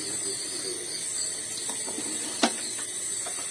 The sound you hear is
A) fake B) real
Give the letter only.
B